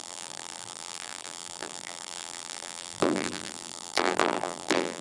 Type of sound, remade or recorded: remade